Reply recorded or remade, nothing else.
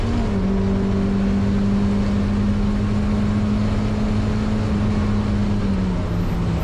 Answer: recorded